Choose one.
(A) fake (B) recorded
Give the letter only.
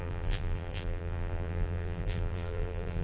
A